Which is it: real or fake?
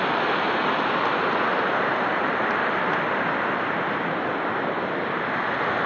real